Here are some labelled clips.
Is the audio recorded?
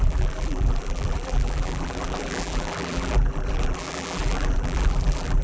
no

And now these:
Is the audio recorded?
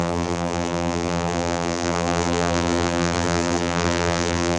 no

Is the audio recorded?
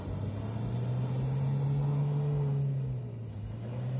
yes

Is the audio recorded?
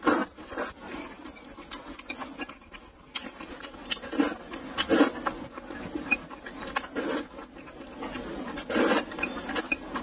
yes